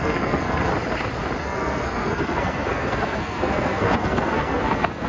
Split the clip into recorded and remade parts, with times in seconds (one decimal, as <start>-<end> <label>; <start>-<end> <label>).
0.0-0.7 remade; 0.7-1.4 recorded; 1.4-5.1 remade